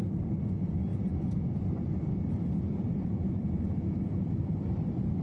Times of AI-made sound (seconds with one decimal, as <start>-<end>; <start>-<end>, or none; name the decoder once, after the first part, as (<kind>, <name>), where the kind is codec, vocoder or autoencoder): 0.9-3.8 (vocoder, BigVGAN v2); 4.4-5.2